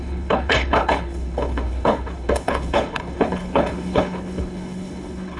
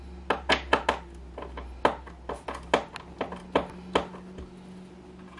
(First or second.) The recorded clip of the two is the second